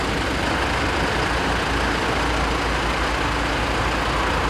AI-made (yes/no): no